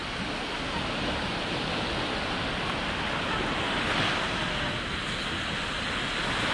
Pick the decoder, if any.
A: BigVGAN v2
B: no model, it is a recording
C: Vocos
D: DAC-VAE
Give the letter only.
B